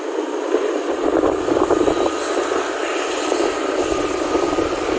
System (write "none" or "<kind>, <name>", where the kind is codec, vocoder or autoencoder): vocoder, BigVGAN v2